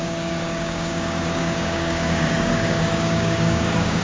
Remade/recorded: remade